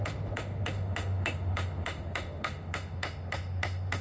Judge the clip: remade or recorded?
remade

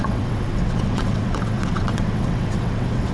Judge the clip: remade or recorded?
remade